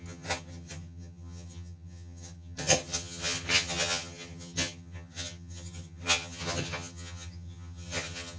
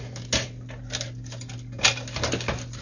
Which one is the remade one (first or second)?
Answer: first